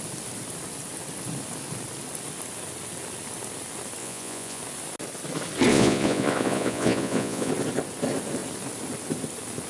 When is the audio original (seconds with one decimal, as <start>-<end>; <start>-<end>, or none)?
0.0-4.0; 4.6-5.7; 7.5-9.7